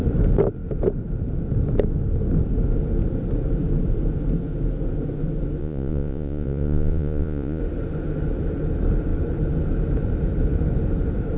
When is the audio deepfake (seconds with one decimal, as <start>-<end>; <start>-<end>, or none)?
5.6-7.6

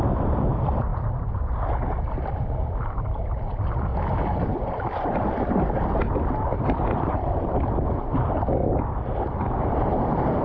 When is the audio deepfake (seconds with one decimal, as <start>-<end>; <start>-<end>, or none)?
0.0-3.9; 9.0-10.4